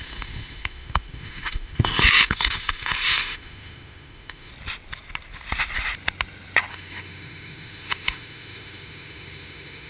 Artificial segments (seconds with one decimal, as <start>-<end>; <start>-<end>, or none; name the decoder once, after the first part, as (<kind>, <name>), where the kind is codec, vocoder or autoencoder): 0.0-4.5 (autoencoder, DAC-VAE); 6.7-9.9